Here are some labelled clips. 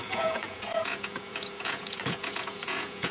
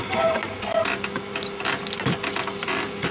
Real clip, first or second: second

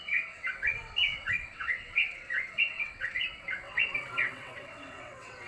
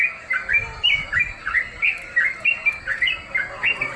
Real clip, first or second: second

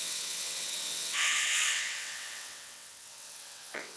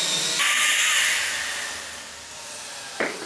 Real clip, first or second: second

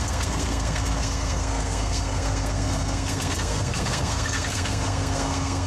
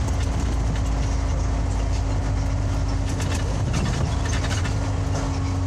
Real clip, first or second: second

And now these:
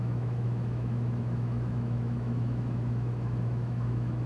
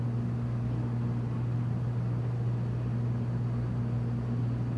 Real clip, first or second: second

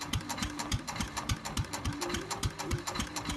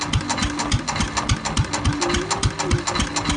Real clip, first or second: second